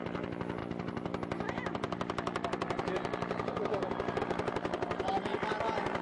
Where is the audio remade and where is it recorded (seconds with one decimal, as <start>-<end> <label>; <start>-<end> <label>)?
0.0-0.6 recorded; 0.6-4.2 remade; 4.2-6.0 recorded